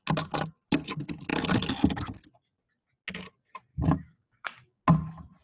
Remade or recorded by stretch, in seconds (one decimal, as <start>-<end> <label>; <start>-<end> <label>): 0.0-3.7 recorded; 3.7-4.8 remade; 4.8-5.4 recorded